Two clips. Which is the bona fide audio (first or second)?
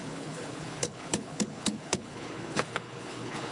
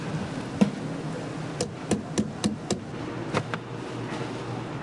second